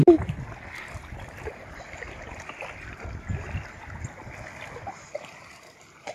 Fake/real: real